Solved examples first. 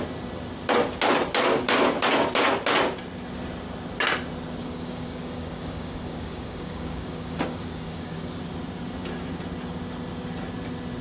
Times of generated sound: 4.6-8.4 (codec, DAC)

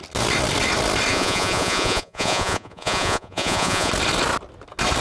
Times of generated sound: 1.1-3.9 (vocoder, Vocos)

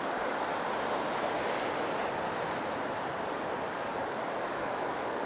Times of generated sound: 0.0-0.5 (codec, DAC); 3.7-5.3

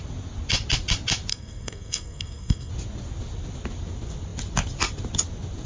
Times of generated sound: 1.3-2.7 (codec, SNAC)

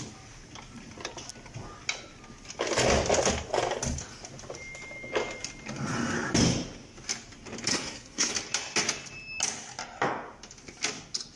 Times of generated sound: 7.7-8.3 (codec, SNAC)

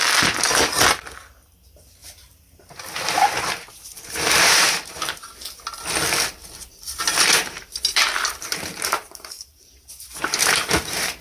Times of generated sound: 2.0-5.4 (vocoder, BigVGAN v2); 6.4-11.2